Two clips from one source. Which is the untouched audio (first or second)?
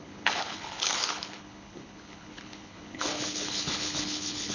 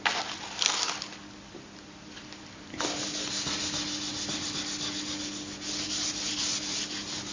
second